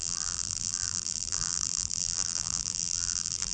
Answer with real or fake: fake